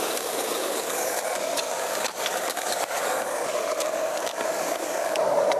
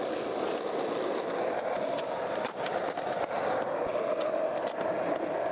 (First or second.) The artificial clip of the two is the first